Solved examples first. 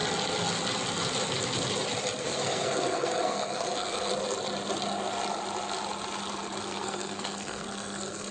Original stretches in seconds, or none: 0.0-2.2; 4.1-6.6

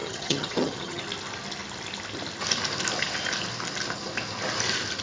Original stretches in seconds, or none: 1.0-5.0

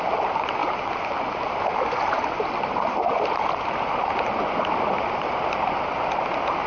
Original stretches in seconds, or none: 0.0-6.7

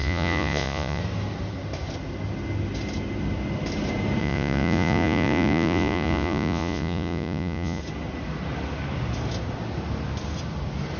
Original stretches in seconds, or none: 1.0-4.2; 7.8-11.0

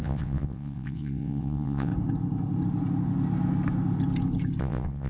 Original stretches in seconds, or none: 1.9-4.6